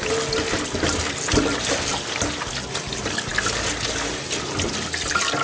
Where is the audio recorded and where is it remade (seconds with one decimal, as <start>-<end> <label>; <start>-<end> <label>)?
0.0-5.4 recorded